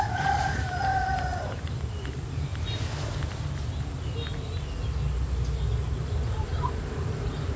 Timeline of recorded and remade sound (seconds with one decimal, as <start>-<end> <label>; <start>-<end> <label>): 0.0-2.5 remade; 2.5-5.8 recorded; 5.8-7.6 remade